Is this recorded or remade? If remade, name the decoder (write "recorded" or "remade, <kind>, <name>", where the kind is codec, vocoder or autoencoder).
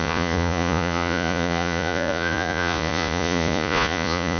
remade, vocoder, Vocos